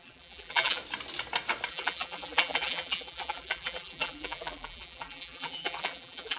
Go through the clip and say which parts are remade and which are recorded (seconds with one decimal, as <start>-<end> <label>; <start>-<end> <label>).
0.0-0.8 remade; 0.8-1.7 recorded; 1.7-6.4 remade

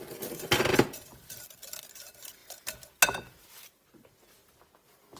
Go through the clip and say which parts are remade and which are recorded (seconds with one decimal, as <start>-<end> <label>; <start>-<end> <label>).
0.0-0.7 recorded; 0.7-1.4 remade; 1.4-5.2 recorded

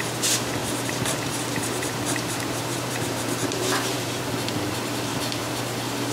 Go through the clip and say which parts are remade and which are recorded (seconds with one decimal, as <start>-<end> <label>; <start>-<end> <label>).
0.0-0.6 recorded; 0.6-4.3 remade; 4.3-5.1 recorded; 5.1-5.6 remade; 5.6-6.1 recorded

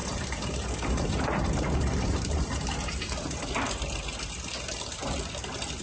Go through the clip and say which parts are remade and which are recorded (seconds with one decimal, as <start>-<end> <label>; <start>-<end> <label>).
0.0-3.5 remade; 3.5-5.8 recorded

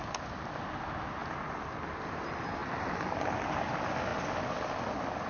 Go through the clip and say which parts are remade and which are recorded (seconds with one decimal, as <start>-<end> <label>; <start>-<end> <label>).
0.0-5.3 recorded